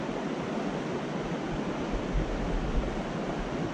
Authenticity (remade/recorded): recorded